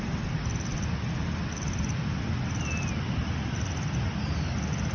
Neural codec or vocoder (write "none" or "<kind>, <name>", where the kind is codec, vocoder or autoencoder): none